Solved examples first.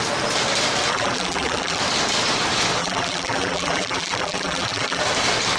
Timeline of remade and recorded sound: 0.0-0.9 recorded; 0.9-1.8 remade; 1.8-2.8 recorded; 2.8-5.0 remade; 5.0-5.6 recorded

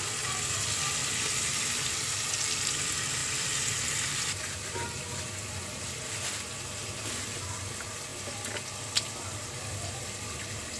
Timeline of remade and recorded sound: 0.0-1.0 recorded; 1.0-2.1 remade; 2.1-3.2 recorded; 3.2-5.2 remade; 5.2-6.8 recorded; 6.8-7.6 remade; 7.6-8.1 recorded; 8.1-10.1 remade; 10.1-10.8 recorded